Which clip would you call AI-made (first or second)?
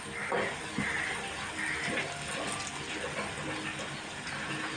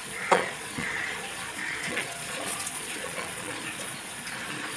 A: second